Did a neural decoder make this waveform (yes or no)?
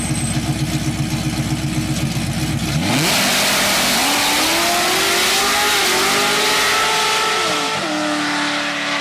no